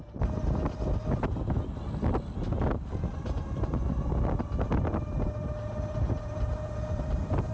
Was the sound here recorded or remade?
recorded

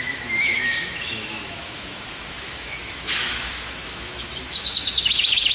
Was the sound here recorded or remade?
remade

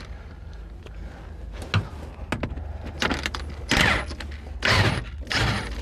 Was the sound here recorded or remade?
recorded